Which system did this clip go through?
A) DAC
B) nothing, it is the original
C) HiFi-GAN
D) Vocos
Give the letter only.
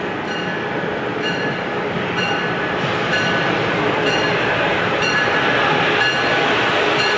B